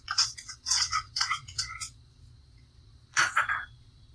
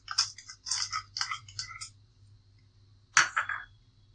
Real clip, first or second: second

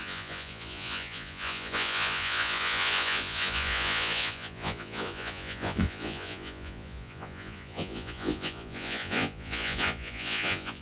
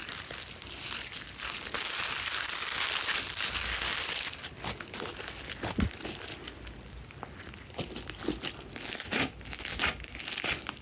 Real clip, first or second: second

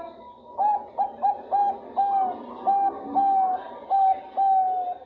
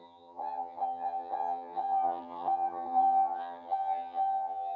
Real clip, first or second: first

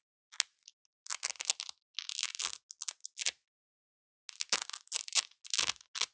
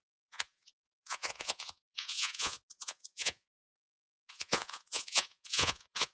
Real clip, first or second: first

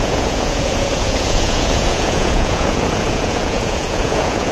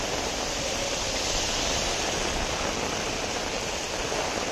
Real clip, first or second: second